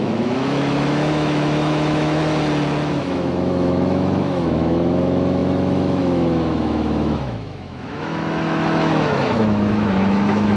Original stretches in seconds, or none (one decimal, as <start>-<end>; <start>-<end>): 2.2-3.0